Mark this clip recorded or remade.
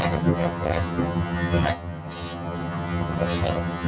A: remade